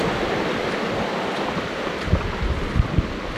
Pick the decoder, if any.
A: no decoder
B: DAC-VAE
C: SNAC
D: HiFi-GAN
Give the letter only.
A